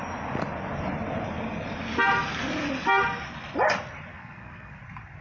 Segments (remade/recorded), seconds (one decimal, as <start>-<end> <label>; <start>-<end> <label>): 0.0-4.1 recorded; 4.1-4.8 remade; 4.8-5.2 recorded